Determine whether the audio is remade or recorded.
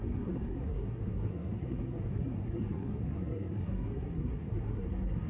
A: remade